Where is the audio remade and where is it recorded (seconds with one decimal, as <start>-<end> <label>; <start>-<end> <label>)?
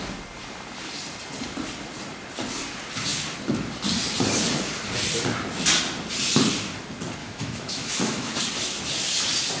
0.0-7.2 recorded; 7.2-8.4 remade; 8.4-9.6 recorded